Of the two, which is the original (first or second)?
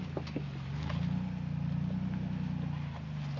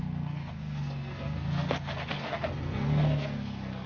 first